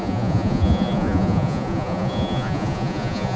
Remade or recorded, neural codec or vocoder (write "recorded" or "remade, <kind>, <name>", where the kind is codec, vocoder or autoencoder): remade, vocoder, Vocos